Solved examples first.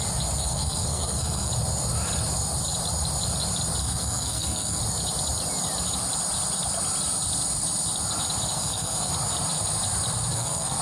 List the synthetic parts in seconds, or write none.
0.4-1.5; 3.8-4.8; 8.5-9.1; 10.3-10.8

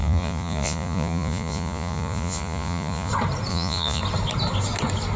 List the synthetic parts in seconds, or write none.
0.0-3.1; 3.5-4.0

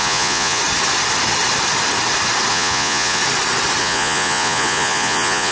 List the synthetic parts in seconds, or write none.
0.0-0.6; 2.5-3.2; 3.8-5.5

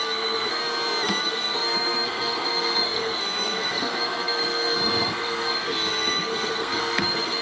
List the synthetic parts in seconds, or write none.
0.0-0.6; 1.2-7.4

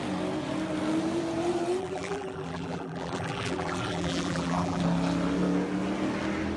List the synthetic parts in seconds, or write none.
1.8-4.8

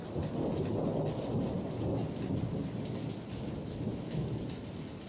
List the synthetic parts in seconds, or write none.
3.9-4.4

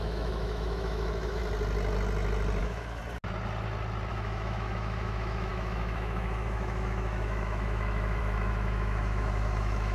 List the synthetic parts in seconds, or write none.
0.0-1.4; 2.6-3.0; 4.1-9.9

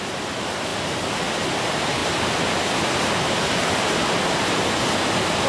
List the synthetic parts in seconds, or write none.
none